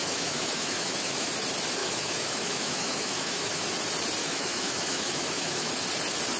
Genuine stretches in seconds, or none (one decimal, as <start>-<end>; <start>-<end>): 1.3-1.8; 3.6-4.2; 5.7-6.4